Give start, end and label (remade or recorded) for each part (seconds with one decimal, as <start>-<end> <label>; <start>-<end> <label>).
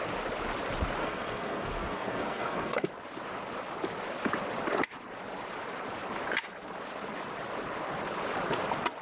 0.0-1.0 recorded; 1.0-2.9 remade; 2.9-9.0 recorded